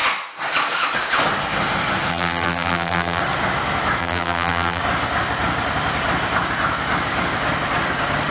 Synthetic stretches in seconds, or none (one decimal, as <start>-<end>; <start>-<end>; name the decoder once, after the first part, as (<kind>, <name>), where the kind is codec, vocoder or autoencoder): 2.1-3.2 (vocoder, BigVGAN v2); 4.0-4.8